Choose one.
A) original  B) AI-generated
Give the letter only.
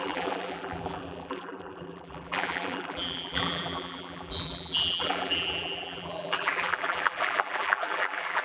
B